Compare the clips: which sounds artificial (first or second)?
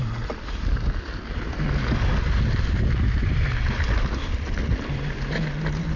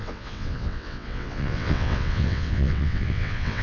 second